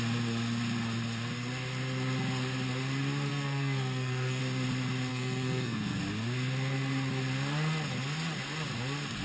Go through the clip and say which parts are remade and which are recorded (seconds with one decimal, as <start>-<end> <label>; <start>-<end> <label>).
0.0-3.3 recorded; 3.3-4.4 remade; 4.4-5.1 recorded; 5.1-6.0 remade; 6.0-9.2 recorded